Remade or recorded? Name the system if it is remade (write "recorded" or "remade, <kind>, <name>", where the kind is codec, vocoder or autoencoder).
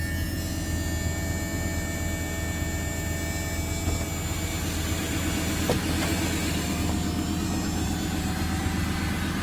recorded